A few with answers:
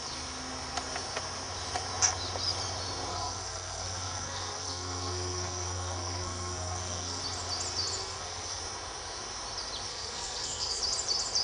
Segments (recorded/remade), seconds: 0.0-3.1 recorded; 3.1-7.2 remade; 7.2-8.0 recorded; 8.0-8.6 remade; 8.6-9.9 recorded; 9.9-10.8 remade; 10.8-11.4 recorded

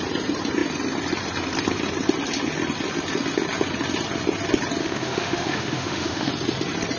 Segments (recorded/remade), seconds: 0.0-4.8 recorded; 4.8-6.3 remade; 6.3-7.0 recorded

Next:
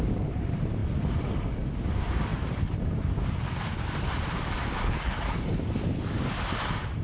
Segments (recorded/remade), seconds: 0.0-7.0 remade